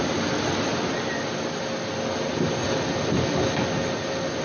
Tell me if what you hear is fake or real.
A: real